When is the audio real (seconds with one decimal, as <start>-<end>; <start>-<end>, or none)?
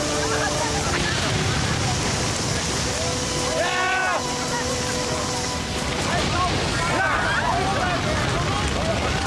0.0-9.3